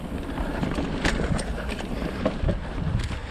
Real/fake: real